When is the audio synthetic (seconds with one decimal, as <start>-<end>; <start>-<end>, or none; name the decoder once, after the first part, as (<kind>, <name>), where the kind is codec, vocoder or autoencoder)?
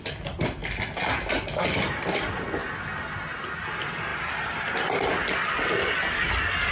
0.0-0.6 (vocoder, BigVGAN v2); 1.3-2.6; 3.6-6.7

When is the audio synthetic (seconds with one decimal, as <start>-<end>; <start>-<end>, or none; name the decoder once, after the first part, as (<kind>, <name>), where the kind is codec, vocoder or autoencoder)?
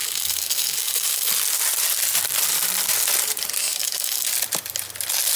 0.0-1.3 (codec, DAC); 3.6-4.3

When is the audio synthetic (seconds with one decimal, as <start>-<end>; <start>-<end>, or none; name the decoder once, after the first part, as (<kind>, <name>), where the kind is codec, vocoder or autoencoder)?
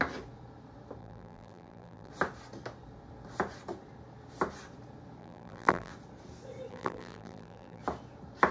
1.0-2.1 (vocoder, BigVGAN v2); 5.2-5.9; 6.7-7.8